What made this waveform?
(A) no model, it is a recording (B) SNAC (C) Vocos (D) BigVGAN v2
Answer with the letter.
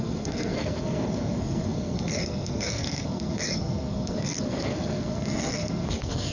B